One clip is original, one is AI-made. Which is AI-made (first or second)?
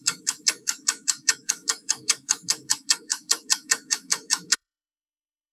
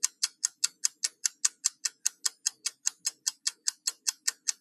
first